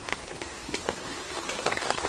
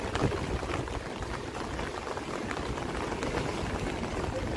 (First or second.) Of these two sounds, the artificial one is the first